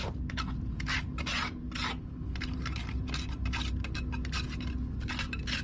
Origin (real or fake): real